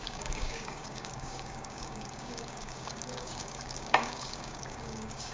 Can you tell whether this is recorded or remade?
remade